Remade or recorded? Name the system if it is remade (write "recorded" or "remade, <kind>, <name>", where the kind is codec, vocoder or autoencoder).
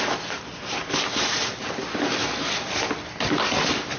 recorded